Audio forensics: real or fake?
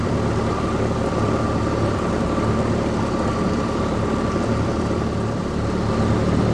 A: fake